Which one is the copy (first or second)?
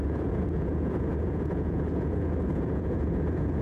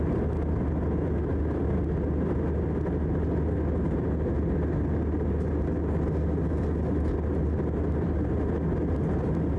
first